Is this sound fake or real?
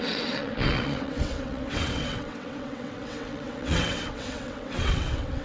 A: fake